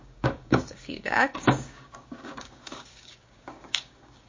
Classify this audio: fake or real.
fake